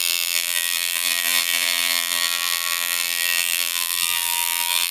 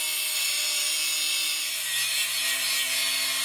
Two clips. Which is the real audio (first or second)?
second